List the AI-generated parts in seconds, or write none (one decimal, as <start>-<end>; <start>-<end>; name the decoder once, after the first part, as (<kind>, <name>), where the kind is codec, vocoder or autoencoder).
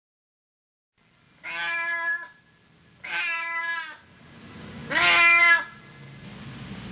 none